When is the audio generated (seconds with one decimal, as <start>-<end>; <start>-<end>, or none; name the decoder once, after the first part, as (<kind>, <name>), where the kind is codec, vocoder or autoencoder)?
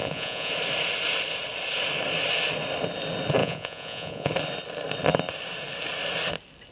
0.0-0.5 (vocoder, Vocos); 3.4-4.3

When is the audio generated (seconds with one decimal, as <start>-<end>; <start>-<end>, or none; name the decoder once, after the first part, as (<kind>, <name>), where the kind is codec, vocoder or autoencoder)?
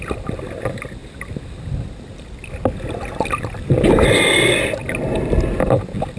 none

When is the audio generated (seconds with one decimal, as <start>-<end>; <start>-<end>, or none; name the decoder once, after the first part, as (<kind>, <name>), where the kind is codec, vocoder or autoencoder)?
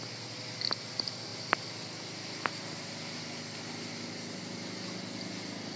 none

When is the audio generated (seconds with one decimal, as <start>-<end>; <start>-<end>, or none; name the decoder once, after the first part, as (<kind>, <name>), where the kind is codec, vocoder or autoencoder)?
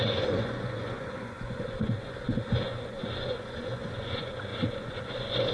0.0-5.5 (vocoder, Vocos)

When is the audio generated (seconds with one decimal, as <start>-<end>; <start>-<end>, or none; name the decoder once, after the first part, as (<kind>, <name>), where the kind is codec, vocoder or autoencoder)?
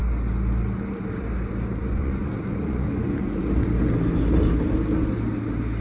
1.8-3.4 (vocoder, Vocos)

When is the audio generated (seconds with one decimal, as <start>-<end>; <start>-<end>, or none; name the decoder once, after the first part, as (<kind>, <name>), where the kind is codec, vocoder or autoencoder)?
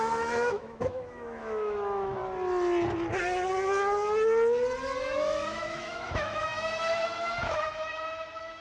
0.0-2.2 (autoencoder, DAC-VAE); 5.0-8.6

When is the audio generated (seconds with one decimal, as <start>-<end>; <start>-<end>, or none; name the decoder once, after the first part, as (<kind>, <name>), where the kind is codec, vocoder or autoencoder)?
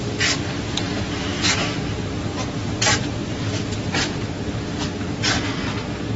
1.3-3.3 (vocoder, BigVGAN v2)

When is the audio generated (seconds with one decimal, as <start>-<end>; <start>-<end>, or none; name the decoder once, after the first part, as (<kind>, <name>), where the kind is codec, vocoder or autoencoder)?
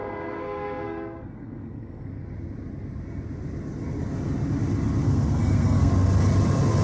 0.0-2.1 (codec, SNAC); 5.0-5.9